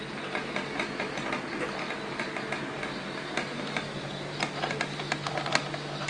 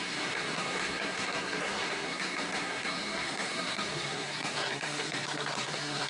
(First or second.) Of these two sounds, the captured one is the first